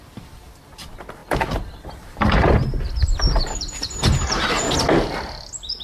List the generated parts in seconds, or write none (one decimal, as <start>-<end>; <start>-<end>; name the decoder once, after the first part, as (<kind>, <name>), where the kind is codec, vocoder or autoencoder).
1.2-4.7 (vocoder, BigVGAN v2)